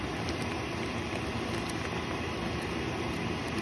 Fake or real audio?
real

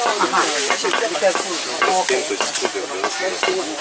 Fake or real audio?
real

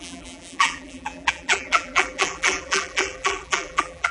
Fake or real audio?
fake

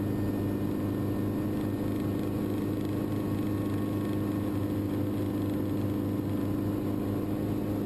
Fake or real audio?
real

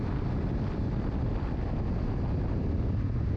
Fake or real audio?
real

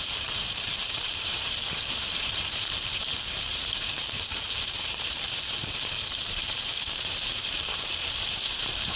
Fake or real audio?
fake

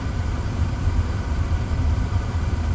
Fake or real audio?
fake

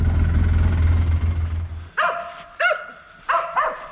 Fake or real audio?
real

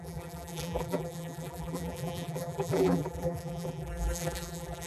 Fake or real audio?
fake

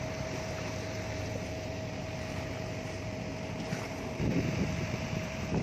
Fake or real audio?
fake